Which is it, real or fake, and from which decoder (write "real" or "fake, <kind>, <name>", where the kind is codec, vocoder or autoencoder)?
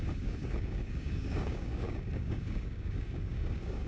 fake, codec, DAC